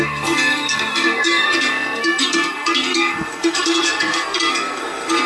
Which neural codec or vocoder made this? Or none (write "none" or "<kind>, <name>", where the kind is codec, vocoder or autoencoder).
codec, SNAC